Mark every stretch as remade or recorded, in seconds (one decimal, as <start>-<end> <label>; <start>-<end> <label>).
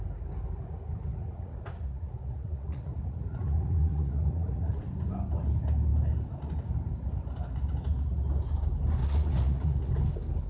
0.0-1.1 recorded; 1.1-4.8 remade; 4.8-9.0 recorded; 9.0-9.9 remade; 9.9-10.5 recorded